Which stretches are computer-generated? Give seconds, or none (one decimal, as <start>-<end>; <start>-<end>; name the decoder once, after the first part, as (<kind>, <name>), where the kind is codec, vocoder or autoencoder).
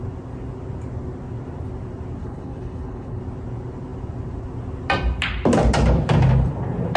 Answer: 2.2-3.2 (codec, HILCodec)